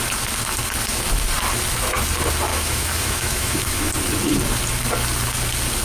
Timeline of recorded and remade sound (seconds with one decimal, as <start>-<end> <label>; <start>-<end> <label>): 0.0-2.5 recorded; 2.5-3.9 remade; 3.9-5.8 recorded